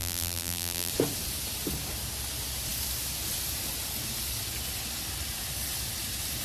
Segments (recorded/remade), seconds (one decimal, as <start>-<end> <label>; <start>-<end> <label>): 0.0-0.9 remade; 0.9-6.4 recorded

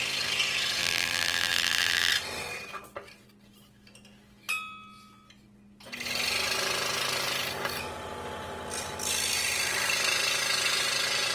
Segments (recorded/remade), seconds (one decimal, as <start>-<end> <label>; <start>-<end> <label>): 0.0-0.8 recorded; 0.8-2.1 remade; 2.1-11.3 recorded

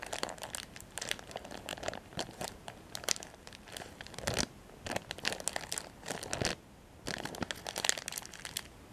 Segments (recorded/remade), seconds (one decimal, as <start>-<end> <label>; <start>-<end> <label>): 0.0-1.7 recorded; 1.7-3.7 remade; 3.7-8.9 recorded